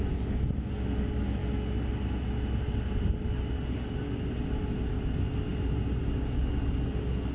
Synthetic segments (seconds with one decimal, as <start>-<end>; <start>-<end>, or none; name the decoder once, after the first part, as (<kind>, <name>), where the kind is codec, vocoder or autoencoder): none

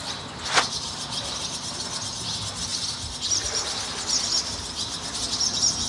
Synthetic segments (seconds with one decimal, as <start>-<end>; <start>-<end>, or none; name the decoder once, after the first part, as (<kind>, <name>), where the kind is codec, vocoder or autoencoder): none

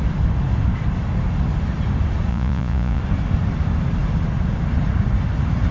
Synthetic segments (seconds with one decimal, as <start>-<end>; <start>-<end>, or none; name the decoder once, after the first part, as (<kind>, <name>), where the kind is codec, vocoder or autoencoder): 2.3-3.0 (vocoder, Vocos)